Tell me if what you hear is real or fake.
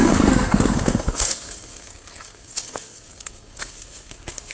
fake